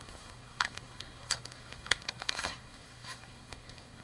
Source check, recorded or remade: remade